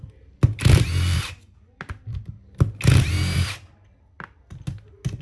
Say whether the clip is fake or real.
real